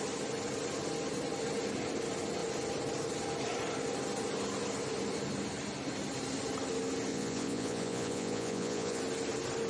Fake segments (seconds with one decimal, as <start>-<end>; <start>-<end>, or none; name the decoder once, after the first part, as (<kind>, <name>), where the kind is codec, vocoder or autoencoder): 7.1-9.0 (vocoder, Vocos)